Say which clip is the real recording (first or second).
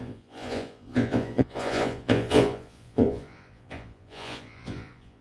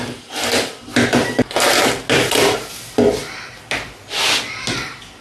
second